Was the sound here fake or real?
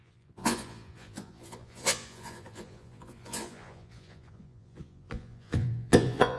fake